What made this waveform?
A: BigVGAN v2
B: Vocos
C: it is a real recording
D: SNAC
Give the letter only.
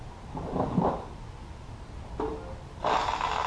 C